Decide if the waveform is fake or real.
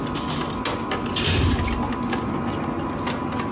real